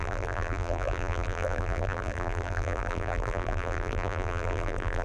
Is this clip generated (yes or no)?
yes